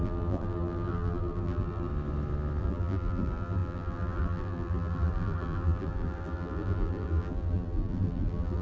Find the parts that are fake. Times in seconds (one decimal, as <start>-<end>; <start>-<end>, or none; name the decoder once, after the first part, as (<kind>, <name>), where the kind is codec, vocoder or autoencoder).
0.0-1.9 (vocoder, BigVGAN v2); 2.6-8.6